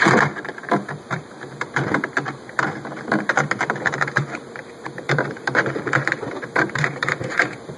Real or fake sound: fake